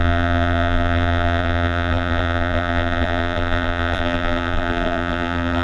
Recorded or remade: remade